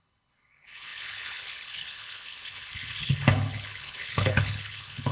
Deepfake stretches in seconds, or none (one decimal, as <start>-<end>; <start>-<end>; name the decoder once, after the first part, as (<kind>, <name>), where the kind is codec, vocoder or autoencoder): 0.0-5.1 (codec, HILCodec)